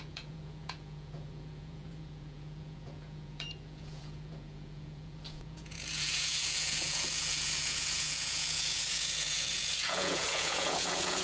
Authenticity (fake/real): fake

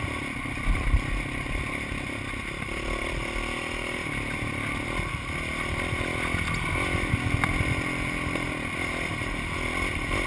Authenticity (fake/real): real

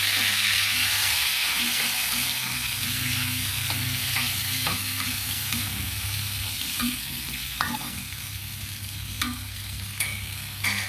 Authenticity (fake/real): fake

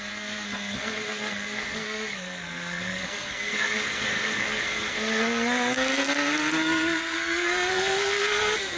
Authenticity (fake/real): fake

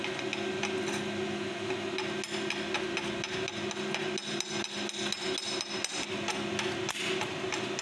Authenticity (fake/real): real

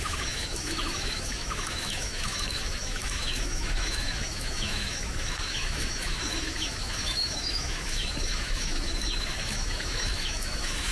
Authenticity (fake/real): fake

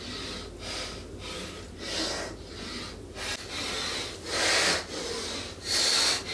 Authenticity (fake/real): real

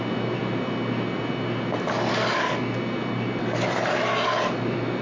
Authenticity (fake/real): real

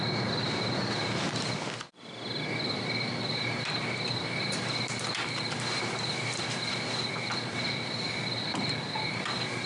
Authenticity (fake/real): real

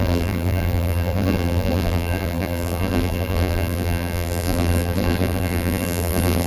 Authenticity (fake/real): fake